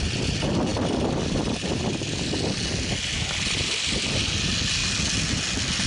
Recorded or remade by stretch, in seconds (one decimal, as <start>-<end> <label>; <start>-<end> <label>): 0.0-5.9 recorded